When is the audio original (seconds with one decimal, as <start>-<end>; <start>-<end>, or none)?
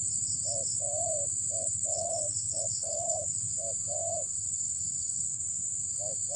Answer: 0.0-1.6; 3.5-4.3; 5.4-6.4